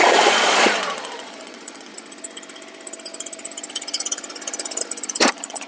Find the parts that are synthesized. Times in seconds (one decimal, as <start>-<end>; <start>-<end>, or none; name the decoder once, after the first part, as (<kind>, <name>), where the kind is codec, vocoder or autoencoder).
0.0-1.9 (vocoder, Vocos); 5.3-5.7